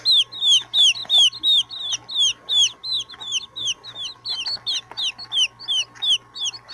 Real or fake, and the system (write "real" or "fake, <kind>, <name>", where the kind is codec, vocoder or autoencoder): real